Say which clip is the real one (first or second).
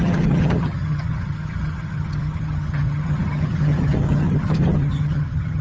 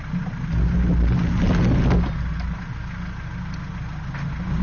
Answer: second